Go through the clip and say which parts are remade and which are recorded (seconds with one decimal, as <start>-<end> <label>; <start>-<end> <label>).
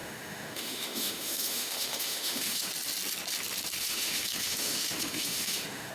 0.0-2.7 remade; 2.7-3.8 recorded; 3.8-5.9 remade